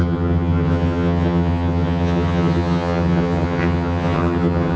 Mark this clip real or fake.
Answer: fake